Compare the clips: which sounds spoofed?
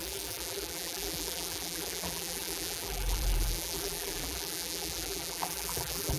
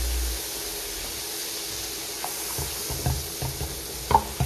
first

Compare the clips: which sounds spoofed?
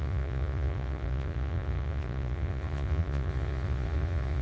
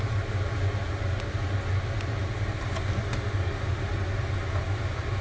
first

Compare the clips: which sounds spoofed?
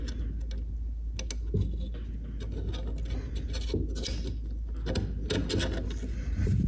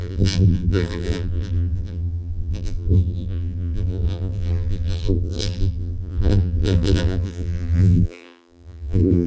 second